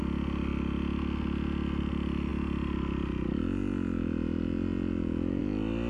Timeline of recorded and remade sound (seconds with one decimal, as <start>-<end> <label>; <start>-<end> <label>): 0.0-5.9 recorded